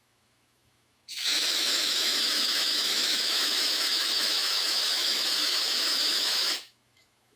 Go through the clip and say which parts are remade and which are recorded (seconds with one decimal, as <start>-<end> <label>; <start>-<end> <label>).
0.0-7.4 remade